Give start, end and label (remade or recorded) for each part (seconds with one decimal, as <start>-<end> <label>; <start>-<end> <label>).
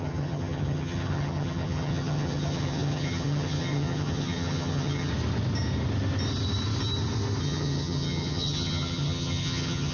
0.0-5.1 remade; 5.1-7.4 recorded; 7.4-9.9 remade